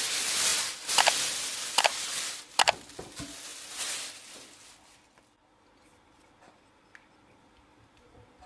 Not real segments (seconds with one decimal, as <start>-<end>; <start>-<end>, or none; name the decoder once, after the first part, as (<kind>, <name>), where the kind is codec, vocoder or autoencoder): none